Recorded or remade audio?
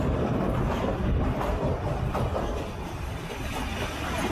remade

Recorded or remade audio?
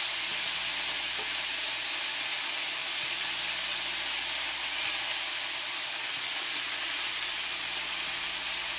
recorded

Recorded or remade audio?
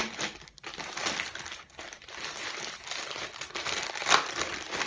recorded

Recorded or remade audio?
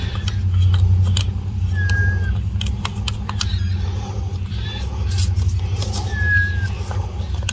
recorded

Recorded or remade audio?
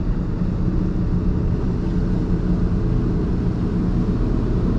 recorded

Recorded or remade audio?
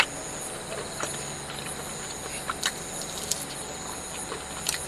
recorded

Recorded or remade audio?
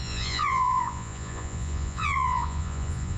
remade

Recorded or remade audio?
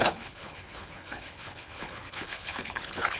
remade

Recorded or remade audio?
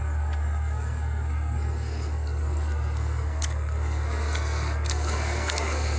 remade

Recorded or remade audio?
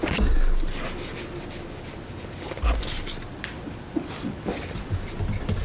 recorded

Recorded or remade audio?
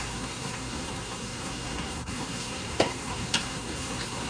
remade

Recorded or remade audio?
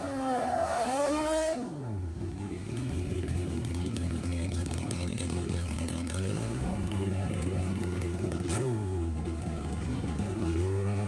remade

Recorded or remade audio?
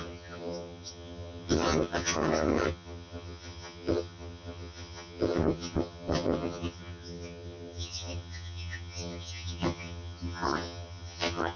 remade